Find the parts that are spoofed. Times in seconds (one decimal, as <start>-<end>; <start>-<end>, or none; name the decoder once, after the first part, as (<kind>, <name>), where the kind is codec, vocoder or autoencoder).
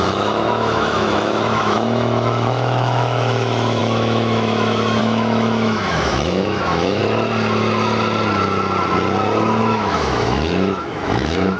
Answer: 0.0-7.0 (autoencoder, DAC-VAE); 9.6-11.6